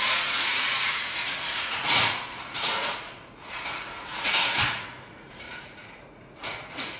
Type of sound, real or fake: fake